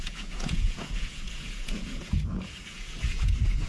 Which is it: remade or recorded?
remade